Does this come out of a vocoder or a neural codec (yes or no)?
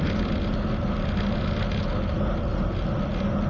no